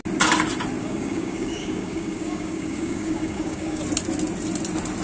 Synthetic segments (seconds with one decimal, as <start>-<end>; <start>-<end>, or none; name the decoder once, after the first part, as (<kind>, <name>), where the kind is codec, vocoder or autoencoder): 0.8-3.8 (codec, DAC)